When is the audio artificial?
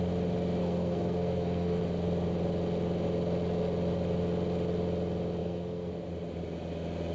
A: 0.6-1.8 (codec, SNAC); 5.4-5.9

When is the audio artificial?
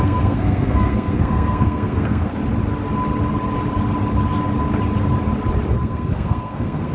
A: 0.0-2.4 (codec, SNAC); 5.7-6.9